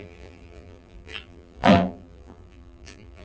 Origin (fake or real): fake